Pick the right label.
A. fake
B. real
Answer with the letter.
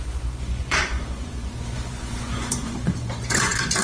A